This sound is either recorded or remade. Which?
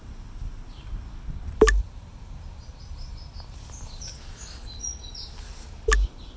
recorded